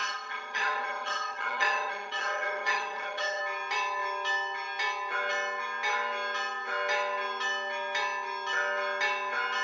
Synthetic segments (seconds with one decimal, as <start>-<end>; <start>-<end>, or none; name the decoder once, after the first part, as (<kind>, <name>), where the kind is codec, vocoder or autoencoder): 0.0-3.4 (vocoder, HiFi-GAN)